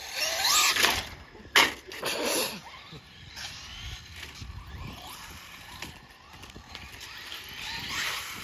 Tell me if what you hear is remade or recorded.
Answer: recorded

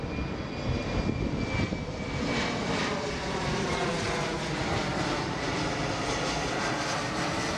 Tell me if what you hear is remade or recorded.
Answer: recorded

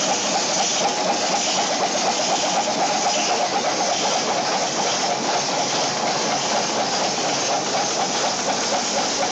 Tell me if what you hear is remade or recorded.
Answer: recorded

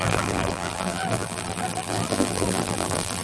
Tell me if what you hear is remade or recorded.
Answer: remade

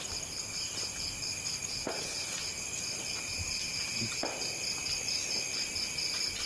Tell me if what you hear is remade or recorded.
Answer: recorded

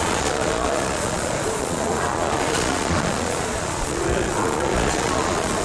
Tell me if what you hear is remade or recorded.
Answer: remade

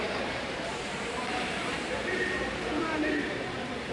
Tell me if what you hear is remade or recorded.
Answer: remade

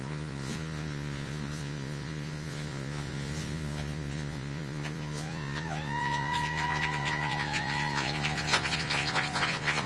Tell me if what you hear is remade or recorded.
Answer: remade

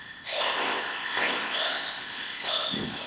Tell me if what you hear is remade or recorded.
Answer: remade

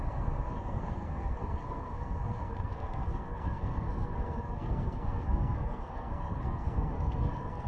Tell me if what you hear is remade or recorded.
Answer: remade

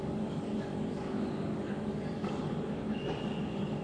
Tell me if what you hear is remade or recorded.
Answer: remade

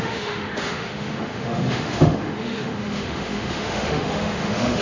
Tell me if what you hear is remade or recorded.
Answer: remade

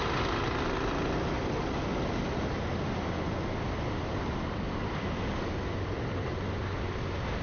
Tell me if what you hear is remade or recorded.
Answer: recorded